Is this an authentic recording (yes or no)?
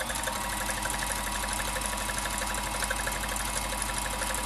yes